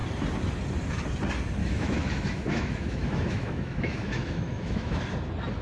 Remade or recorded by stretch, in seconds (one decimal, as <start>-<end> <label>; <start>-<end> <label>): 0.0-1.6 recorded; 1.6-5.0 remade; 5.0-5.6 recorded